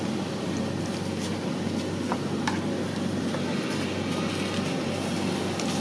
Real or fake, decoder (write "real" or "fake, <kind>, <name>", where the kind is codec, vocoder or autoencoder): real